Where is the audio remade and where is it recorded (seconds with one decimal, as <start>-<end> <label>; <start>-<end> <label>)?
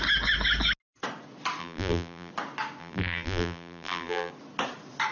0.0-1.6 recorded; 1.6-2.3 remade; 2.3-2.8 recorded; 2.8-4.3 remade; 4.3-5.1 recorded